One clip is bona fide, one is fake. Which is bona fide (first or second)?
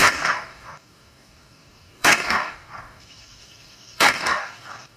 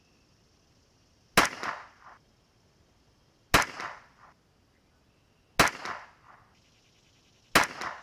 second